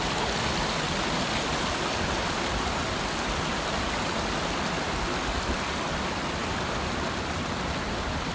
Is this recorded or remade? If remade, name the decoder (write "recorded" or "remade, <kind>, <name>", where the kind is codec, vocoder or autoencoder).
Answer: recorded